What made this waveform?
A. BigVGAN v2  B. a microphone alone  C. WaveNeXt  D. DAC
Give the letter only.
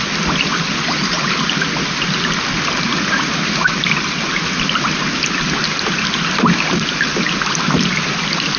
B